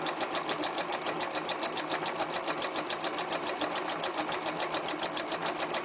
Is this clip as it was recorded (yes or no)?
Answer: yes